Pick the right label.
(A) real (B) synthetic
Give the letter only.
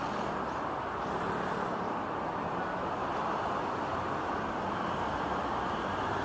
A